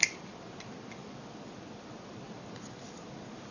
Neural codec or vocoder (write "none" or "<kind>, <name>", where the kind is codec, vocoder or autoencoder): none